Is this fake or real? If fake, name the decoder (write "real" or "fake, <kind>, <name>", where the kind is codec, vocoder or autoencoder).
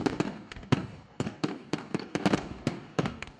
fake, codec, DAC